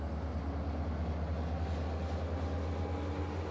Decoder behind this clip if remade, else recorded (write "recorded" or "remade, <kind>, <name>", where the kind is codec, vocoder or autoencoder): recorded